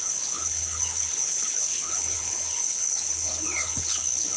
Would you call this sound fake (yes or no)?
yes